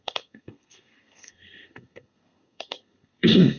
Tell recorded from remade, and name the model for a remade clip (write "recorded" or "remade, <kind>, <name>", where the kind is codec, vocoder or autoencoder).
remade, codec, SNAC